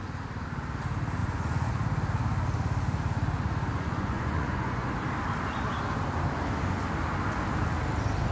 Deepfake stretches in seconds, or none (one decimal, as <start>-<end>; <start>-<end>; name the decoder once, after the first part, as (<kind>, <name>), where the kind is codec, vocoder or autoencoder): 1.2-1.7 (vocoder, Vocos); 3.7-4.9